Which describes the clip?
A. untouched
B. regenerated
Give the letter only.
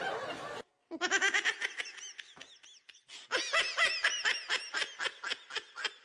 A